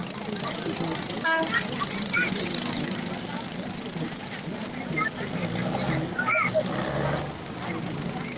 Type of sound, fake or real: real